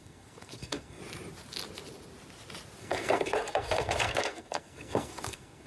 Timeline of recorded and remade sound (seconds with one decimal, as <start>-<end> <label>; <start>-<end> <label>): 0.0-1.0 remade; 1.0-2.8 recorded; 2.8-5.7 remade